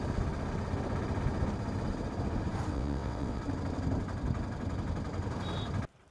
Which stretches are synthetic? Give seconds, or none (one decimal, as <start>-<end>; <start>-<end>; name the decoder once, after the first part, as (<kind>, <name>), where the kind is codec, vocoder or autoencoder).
2.7-3.4 (vocoder, WaveNeXt)